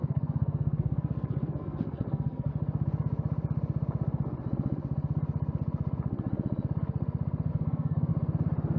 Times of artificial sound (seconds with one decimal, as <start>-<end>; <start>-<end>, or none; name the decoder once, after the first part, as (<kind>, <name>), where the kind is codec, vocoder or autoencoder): 0.0-2.5 (codec, SNAC); 7.5-8.1